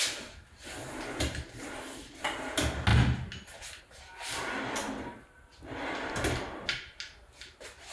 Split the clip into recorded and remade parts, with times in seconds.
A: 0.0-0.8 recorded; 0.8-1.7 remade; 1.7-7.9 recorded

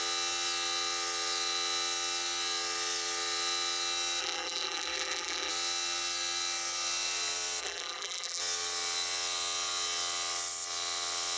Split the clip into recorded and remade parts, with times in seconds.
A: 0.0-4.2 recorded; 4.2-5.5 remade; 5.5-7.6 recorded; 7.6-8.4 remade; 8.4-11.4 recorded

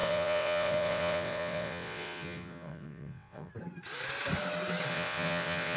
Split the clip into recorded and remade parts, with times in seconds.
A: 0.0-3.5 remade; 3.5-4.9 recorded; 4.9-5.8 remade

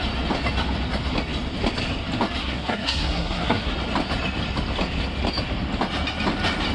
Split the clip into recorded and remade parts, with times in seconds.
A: 0.0-2.4 recorded; 2.4-3.7 remade; 3.7-6.7 recorded

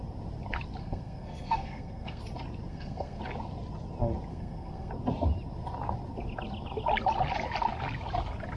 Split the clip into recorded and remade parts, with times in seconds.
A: 0.0-0.8 recorded; 0.8-2.2 remade; 2.2-2.7 recorded; 2.7-3.2 remade; 3.2-4.3 recorded; 4.3-4.9 remade; 4.9-8.6 recorded